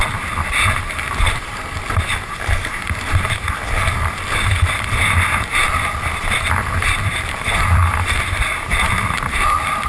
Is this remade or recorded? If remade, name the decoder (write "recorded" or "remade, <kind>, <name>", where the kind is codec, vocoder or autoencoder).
recorded